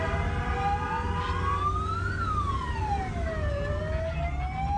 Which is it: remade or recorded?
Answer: recorded